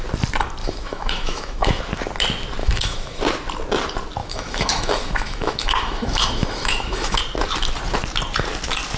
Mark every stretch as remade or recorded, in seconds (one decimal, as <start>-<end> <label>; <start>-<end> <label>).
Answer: 0.0-0.6 recorded; 0.6-1.8 remade; 1.8-2.6 recorded; 2.6-3.2 remade; 3.2-4.2 recorded; 4.2-7.2 remade; 7.2-9.0 recorded